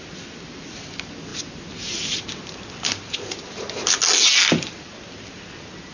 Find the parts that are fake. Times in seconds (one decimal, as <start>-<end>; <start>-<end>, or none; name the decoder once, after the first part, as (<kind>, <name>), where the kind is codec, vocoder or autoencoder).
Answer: none